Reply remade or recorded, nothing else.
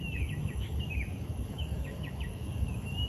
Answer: remade